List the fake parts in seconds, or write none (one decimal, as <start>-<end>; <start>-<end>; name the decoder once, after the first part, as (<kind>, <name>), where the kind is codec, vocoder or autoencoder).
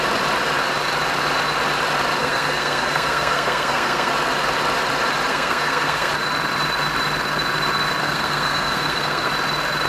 2.2-4.1 (codec, SNAC); 5.3-6.1; 8.0-9.3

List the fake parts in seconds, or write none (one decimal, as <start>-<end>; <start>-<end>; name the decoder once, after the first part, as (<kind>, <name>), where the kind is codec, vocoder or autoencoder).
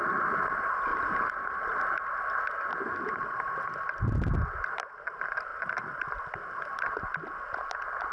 0.9-2.4 (vocoder, BigVGAN v2)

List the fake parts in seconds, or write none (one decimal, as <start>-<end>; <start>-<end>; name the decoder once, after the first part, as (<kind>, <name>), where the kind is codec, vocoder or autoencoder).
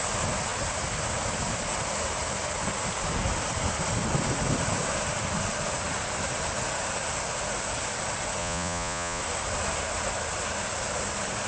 8.4-9.2 (vocoder, Vocos)